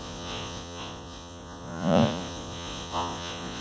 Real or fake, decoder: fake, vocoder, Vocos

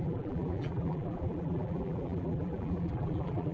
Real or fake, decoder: fake, vocoder, BigVGAN v2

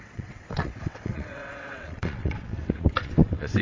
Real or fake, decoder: fake, vocoder, WaveNeXt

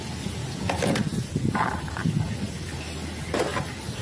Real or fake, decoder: real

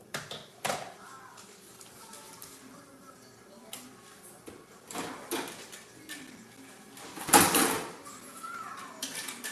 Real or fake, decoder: fake, vocoder, BigVGAN v2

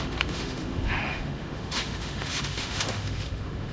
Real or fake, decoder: fake, autoencoder, DAC-VAE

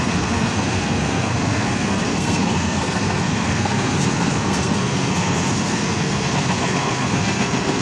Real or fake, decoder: fake, codec, SNAC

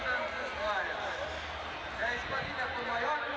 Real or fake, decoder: real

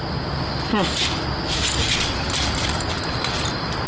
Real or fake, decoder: real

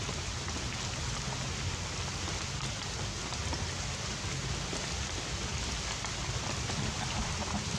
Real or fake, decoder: real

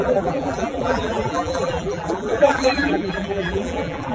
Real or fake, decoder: fake, vocoder, BigVGAN v2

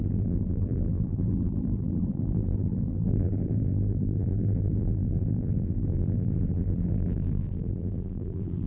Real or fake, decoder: fake, vocoder, BigVGAN v2